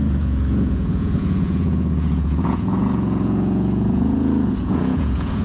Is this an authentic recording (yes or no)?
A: no